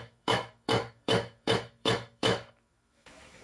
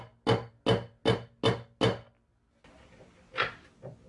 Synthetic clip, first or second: first